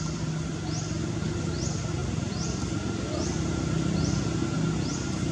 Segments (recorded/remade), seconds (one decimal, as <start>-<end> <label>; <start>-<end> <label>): 0.0-5.3 recorded